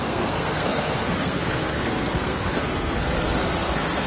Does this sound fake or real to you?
fake